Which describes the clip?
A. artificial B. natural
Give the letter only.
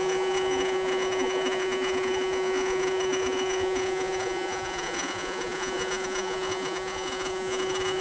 A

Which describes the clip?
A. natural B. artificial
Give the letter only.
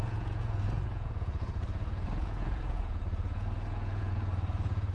B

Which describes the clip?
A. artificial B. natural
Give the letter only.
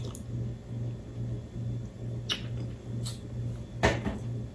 B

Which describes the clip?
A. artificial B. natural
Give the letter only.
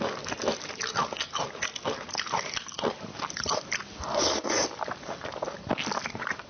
B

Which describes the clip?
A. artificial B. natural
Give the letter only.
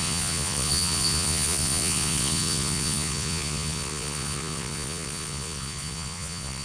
A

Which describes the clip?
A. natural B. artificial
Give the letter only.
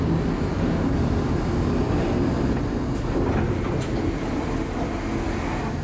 A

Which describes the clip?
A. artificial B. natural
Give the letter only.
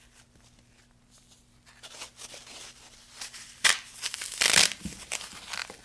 B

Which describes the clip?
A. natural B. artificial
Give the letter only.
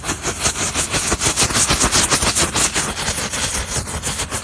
A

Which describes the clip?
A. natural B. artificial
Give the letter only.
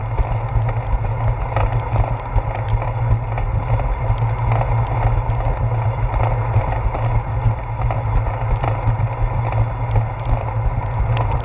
A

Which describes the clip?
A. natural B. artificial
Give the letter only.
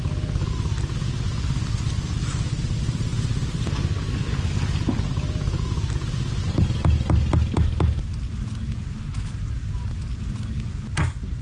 A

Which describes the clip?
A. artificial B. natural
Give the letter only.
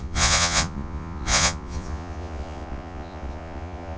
A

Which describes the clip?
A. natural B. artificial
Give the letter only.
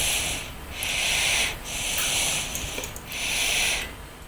A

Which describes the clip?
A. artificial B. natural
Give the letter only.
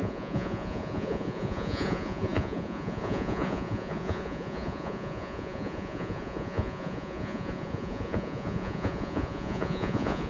A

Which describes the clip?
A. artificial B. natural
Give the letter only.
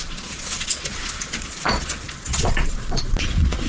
A